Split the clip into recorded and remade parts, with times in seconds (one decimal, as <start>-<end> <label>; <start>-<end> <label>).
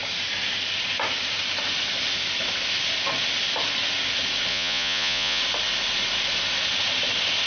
0.0-4.5 recorded; 4.5-5.4 remade; 5.4-7.5 recorded